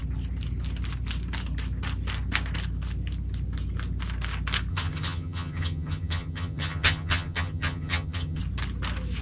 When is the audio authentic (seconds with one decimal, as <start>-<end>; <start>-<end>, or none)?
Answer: 0.0-4.7; 8.4-9.2